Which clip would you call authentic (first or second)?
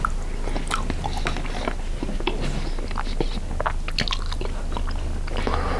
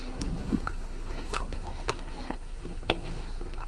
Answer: first